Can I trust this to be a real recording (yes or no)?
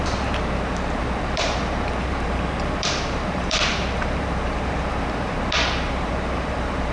no